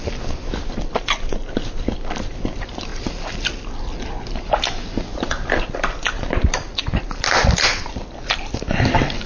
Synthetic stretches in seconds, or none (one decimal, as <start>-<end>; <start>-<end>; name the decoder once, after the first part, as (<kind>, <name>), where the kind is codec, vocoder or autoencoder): none